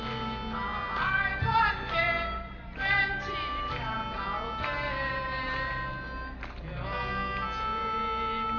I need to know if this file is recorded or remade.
recorded